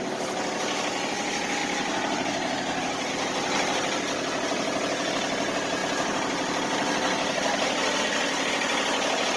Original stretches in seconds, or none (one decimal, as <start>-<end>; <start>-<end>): 0.0-1.6; 3.1-9.4

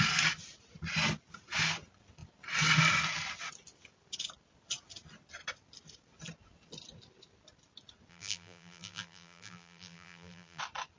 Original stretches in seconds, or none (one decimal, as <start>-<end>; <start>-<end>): 0.0-8.1; 10.6-11.0

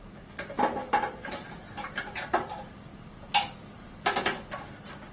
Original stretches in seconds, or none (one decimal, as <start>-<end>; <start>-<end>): 0.0-0.8; 1.5-5.1

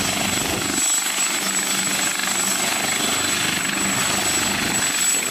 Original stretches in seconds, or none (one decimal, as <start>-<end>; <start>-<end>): 0.0-5.3

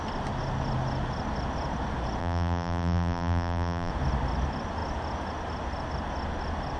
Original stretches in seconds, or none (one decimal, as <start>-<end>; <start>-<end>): 0.0-2.2; 3.9-6.8

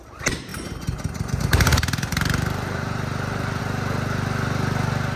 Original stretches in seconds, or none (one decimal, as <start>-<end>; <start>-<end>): 0.0-0.5; 3.6-5.2

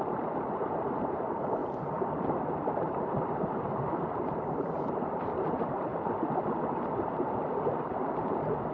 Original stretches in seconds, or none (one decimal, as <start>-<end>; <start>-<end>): 5.9-6.9